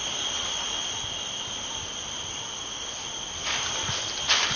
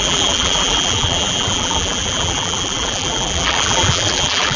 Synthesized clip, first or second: second